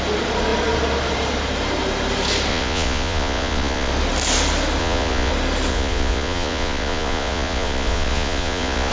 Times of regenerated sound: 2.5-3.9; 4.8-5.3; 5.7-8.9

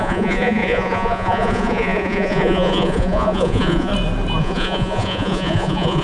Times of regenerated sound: 0.0-3.9; 4.4-6.0